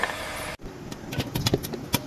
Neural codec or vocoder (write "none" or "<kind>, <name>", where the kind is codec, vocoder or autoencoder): none